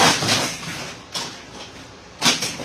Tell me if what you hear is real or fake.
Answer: real